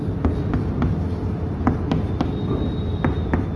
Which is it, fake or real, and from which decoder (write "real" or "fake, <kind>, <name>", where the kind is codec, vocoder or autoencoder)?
real